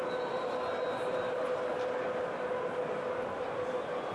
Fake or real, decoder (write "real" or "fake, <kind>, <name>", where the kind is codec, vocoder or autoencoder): real